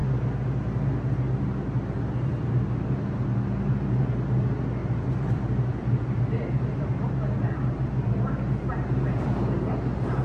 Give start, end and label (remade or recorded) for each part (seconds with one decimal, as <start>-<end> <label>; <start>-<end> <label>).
0.0-4.8 recorded; 4.8-7.9 remade; 7.9-10.2 recorded